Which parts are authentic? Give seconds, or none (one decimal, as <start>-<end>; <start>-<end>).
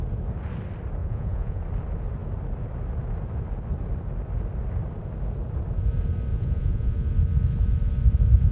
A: 0.0-1.0; 1.6-6.3; 7.1-8.5